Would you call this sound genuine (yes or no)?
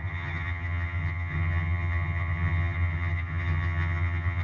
no